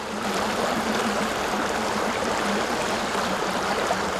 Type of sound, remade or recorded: recorded